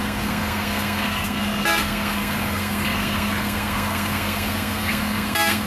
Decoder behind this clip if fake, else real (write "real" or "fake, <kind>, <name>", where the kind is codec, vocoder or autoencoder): fake, codec, SNAC